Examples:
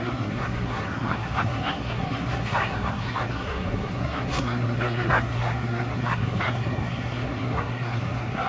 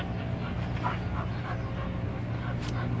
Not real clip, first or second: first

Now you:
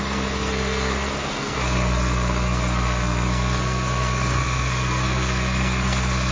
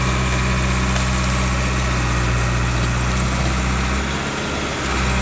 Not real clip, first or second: first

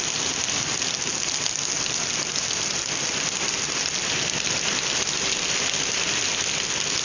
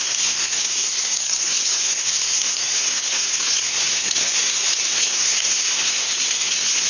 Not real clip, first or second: second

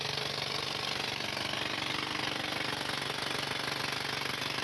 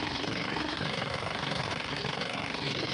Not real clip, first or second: second